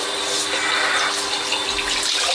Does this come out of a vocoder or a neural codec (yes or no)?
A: no